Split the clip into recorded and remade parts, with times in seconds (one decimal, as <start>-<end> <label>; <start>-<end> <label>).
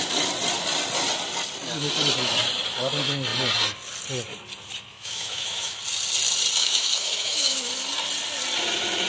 0.0-4.9 recorded; 4.9-5.8 remade; 5.8-6.6 recorded; 6.6-7.7 remade; 7.7-9.1 recorded